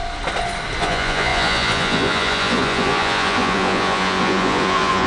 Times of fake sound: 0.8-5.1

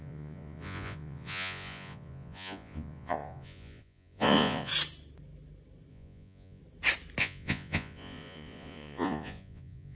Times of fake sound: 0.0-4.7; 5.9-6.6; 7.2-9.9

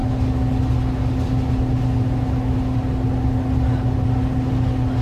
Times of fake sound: none

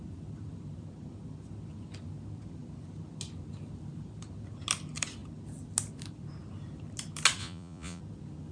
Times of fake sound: 7.4-8.0

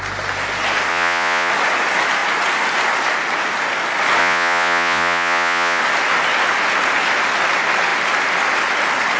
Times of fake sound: 0.9-1.5; 4.2-5.8